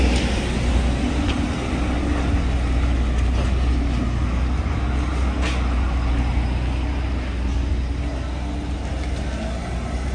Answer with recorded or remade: recorded